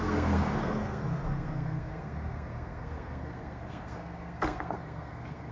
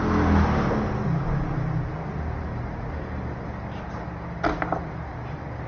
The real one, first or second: second